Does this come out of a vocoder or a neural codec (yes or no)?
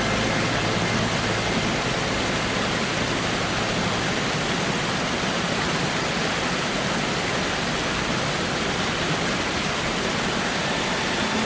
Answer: no